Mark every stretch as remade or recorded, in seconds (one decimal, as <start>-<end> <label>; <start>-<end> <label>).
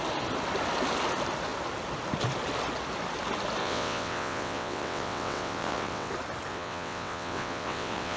0.0-3.6 recorded; 3.6-6.1 remade; 6.1-6.5 recorded; 6.5-8.2 remade